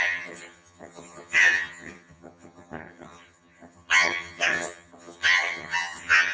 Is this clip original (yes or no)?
no